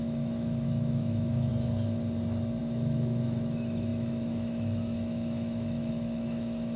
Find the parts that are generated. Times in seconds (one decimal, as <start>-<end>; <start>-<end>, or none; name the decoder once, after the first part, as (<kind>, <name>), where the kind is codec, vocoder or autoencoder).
0.0-1.5 (autoencoder, DAC-VAE); 2.6-6.8